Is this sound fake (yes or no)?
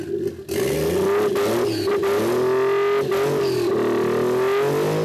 no